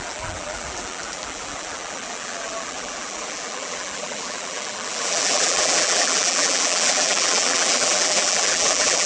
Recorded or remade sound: remade